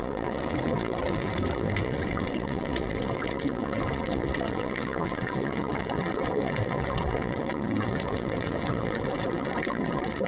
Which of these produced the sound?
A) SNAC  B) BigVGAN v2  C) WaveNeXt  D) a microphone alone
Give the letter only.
C